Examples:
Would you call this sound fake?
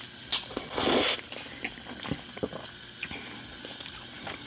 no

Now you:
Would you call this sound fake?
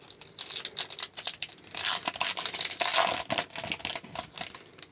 no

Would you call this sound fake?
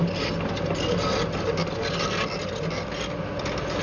no